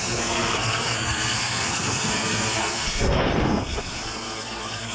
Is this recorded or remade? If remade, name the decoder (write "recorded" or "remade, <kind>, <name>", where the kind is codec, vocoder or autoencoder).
remade, codec, SNAC